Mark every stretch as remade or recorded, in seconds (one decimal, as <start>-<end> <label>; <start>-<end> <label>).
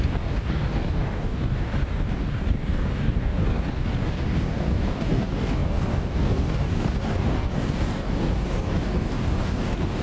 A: 0.0-10.0 remade